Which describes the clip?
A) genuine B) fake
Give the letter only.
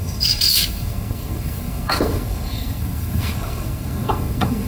B